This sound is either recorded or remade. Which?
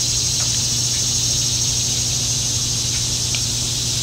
recorded